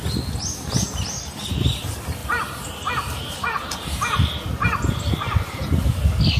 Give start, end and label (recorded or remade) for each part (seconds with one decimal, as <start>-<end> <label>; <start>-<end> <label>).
0.0-2.2 recorded; 2.2-6.0 remade; 6.0-6.4 recorded